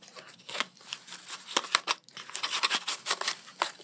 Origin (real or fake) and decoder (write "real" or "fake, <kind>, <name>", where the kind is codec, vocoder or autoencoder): real